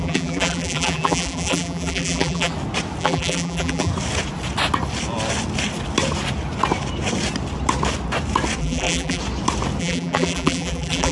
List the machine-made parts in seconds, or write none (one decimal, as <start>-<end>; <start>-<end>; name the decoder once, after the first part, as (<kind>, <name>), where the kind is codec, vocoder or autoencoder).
0.0-2.5 (vocoder, BigVGAN v2); 3.0-3.9; 8.6-9.2; 9.8-11.1